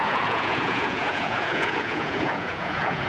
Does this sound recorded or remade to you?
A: remade